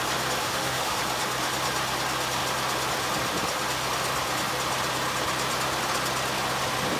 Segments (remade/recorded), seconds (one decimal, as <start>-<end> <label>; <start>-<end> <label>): 0.0-0.4 recorded; 0.4-1.0 remade; 1.0-7.0 recorded